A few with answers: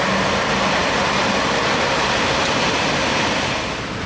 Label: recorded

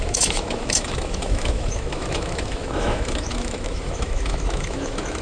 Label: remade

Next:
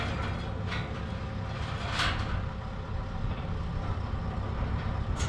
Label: recorded